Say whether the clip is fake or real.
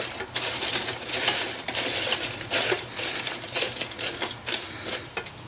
real